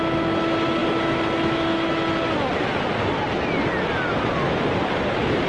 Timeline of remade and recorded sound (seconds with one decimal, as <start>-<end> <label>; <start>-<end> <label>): 0.0-5.5 recorded